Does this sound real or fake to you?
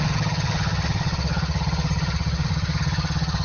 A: fake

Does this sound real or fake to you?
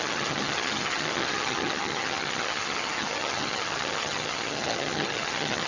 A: fake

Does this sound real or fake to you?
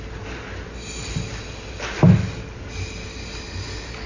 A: real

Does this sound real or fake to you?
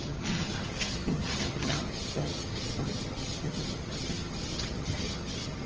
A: fake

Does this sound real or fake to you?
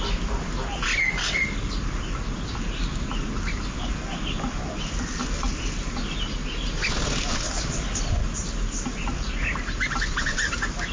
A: real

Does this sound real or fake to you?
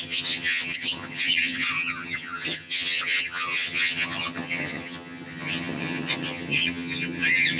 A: fake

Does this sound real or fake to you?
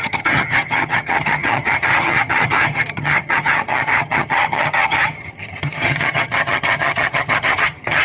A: fake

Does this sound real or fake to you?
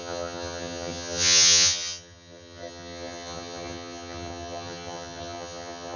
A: fake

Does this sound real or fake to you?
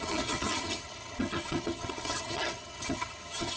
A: fake